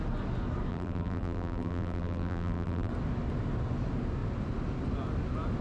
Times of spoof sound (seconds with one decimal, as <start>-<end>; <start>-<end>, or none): 0.7-2.9